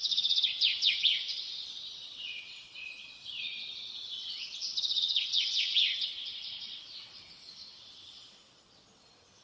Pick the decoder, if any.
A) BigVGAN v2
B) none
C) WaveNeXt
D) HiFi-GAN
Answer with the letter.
C